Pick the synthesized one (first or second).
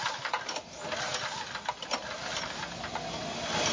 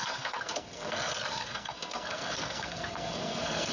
second